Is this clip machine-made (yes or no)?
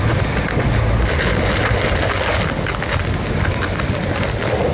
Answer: no